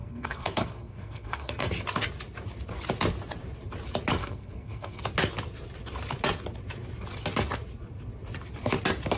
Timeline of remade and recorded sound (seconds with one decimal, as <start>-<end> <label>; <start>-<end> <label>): 0.0-1.7 remade; 1.7-4.2 recorded; 4.2-5.0 remade; 5.0-9.2 recorded